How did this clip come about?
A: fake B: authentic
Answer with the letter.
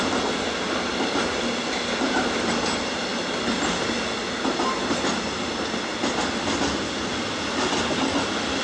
B